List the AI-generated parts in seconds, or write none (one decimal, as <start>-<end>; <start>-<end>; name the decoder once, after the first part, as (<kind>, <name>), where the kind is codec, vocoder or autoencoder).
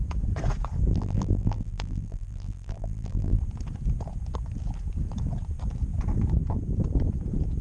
0.9-3.4 (vocoder, BigVGAN v2)